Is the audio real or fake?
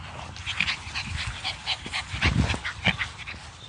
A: real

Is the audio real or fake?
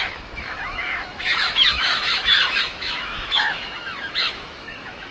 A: fake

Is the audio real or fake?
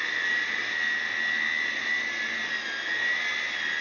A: real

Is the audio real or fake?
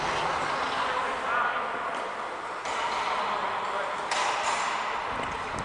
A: real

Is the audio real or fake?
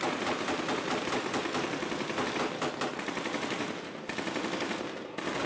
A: real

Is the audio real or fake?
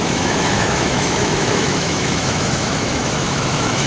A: fake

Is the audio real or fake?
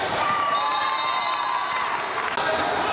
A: real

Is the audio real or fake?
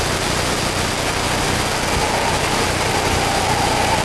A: real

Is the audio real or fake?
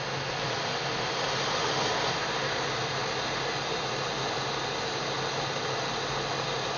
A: real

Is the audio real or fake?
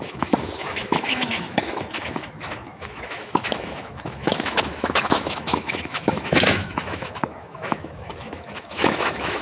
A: fake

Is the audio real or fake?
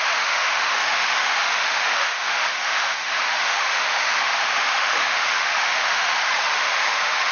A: fake